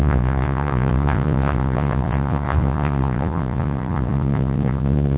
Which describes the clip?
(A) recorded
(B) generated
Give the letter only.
B